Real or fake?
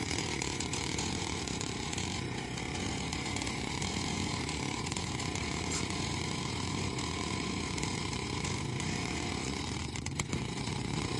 fake